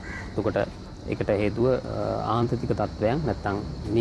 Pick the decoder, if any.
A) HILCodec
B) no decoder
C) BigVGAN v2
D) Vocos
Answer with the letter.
C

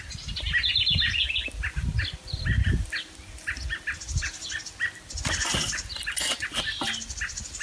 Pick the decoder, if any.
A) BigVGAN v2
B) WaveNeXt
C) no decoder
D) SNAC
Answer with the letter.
C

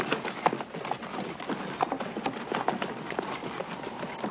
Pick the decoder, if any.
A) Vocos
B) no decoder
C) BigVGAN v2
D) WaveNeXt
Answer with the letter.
B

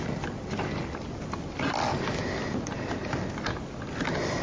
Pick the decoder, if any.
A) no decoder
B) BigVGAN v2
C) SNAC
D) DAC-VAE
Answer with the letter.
A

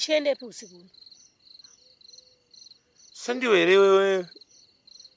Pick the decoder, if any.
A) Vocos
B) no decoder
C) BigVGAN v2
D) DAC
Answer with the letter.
B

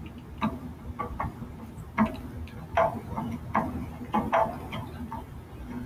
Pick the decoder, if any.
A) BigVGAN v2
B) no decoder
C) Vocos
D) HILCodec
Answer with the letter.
B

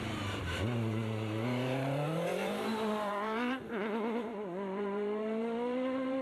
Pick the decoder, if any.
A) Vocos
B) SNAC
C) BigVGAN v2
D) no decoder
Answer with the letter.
C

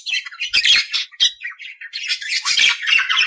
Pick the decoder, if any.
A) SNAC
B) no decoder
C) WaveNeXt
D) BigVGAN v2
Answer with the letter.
D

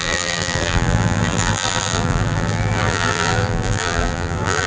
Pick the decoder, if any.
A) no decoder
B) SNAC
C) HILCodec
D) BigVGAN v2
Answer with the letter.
D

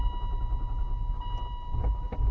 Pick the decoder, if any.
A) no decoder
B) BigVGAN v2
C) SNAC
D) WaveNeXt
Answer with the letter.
A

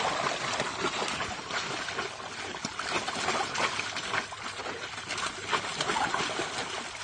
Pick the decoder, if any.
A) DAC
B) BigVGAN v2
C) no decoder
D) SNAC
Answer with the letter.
B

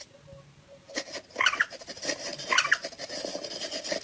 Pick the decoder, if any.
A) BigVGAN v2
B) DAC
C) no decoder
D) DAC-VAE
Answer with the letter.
C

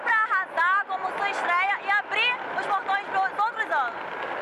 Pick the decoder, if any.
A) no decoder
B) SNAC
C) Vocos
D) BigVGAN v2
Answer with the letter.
A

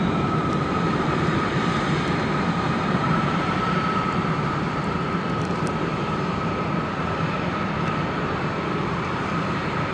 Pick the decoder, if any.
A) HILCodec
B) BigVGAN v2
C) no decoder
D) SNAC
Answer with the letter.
B